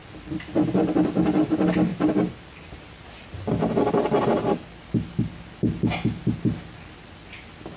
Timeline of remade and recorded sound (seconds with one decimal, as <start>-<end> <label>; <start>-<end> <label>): 0.0-7.8 recorded